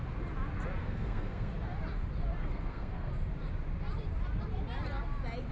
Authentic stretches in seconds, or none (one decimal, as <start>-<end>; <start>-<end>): 0.0-0.8; 1.5-2.4; 3.1-5.5